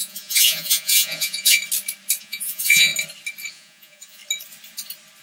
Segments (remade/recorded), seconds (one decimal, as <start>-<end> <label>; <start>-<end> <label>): 0.0-1.6 remade; 1.6-2.2 recorded; 2.2-2.9 remade; 2.9-3.5 recorded; 3.5-4.2 remade; 4.2-5.2 recorded